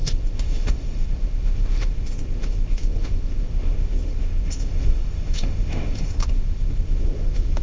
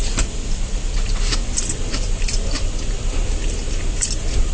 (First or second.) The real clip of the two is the second